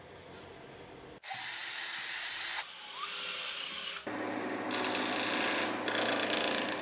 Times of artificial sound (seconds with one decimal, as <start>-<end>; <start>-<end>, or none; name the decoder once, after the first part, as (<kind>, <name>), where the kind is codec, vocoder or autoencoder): none